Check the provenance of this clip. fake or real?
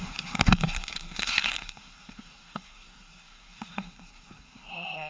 fake